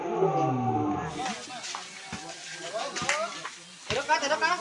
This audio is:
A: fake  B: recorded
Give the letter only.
B